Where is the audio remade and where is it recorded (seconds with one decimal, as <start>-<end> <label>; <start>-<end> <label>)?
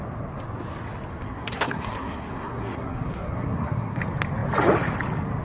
0.0-1.1 recorded; 1.1-4.0 remade; 4.0-5.4 recorded